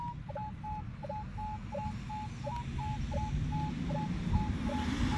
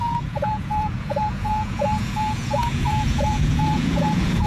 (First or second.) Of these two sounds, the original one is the first